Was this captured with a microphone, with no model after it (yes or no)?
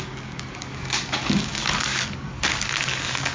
no